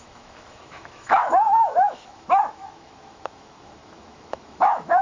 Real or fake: fake